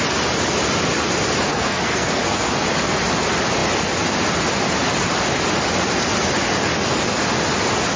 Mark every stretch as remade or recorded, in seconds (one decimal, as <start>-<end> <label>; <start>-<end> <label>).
0.0-1.5 recorded; 1.5-2.5 remade; 2.5-8.0 recorded